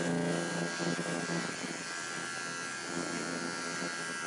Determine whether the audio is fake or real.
real